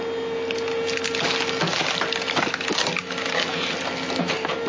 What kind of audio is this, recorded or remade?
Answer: recorded